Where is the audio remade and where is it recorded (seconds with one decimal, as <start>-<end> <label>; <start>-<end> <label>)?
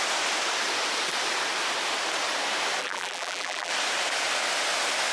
0.0-2.8 recorded; 2.8-3.7 remade; 3.7-5.1 recorded